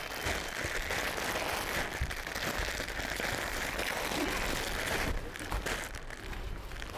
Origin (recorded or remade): recorded